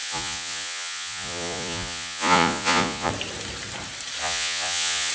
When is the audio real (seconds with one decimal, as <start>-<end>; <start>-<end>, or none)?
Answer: 3.1-4.2